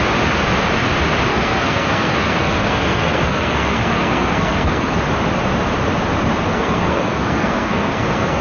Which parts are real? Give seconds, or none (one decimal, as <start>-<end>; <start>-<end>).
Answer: 0.0-1.3; 5.0-6.5